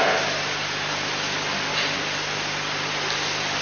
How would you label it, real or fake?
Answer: real